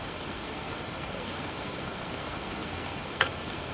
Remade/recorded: remade